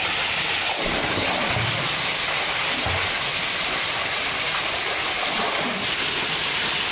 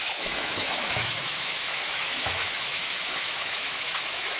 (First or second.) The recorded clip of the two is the first